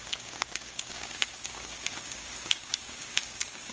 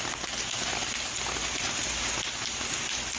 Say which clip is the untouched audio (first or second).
second